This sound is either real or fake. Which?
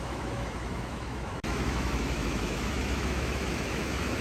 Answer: fake